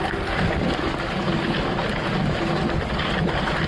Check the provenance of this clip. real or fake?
real